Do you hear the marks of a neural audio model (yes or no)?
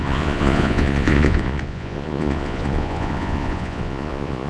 yes